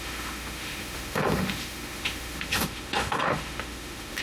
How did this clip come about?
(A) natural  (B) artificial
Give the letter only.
B